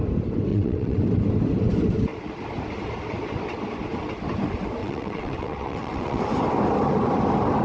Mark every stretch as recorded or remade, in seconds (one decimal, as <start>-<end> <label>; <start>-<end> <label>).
0.0-0.5 recorded; 0.5-1.0 remade; 1.0-4.8 recorded; 4.8-6.2 remade; 6.2-7.6 recorded